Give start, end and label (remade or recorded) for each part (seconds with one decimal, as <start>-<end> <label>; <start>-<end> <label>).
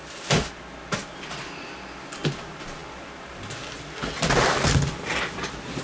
0.0-5.8 recorded